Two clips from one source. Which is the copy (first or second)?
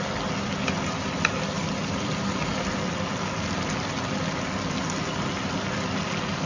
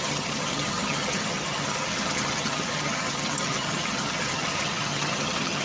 second